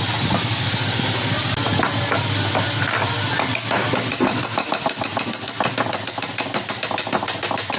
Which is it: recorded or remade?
recorded